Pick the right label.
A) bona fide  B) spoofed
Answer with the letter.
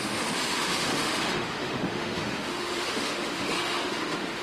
B